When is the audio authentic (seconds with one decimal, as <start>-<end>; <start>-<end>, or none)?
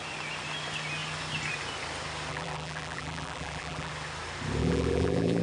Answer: 0.0-2.3; 3.9-4.6